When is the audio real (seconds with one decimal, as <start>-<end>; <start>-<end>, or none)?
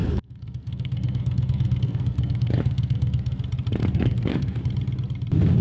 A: 3.4-3.8; 4.6-5.6